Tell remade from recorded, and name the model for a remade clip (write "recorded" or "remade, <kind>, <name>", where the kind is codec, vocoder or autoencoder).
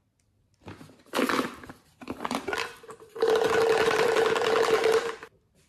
recorded